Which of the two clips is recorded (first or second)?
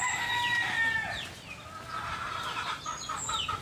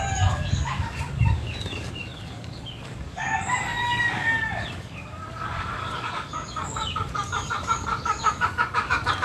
first